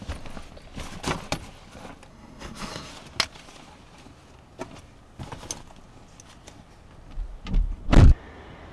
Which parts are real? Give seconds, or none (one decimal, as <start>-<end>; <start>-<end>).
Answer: 0.0-2.1; 2.9-8.7